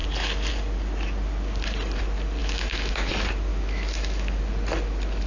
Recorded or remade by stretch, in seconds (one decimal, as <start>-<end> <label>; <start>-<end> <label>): 0.0-2.4 recorded; 2.4-3.1 remade; 3.1-3.5 recorded; 3.5-4.4 remade; 4.4-5.3 recorded